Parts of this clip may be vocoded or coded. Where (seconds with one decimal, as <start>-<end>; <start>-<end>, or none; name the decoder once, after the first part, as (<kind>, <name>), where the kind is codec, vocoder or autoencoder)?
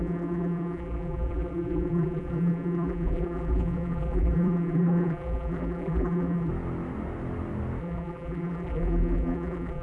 0.0-6.5 (vocoder, BigVGAN v2); 7.8-9.8